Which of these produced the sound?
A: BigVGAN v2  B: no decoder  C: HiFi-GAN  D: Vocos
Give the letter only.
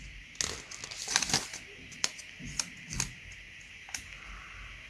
B